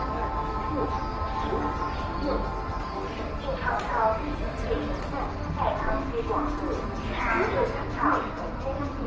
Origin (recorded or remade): recorded